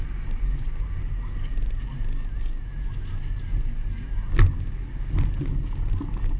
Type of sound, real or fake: real